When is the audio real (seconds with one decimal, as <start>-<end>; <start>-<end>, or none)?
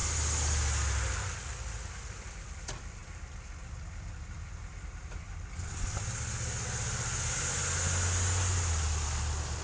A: 0.0-9.6